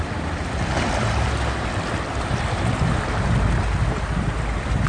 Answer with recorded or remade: remade